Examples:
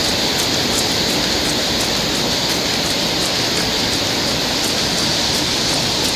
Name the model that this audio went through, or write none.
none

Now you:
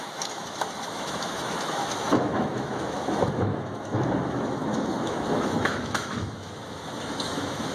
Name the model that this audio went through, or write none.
autoencoder, DAC-VAE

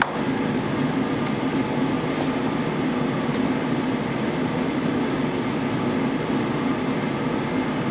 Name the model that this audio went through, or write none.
none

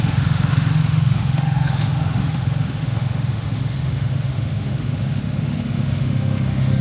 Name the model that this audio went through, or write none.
autoencoder, DAC-VAE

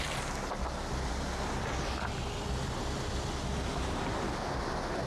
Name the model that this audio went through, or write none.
none